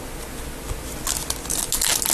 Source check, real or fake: real